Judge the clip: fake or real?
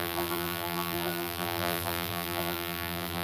fake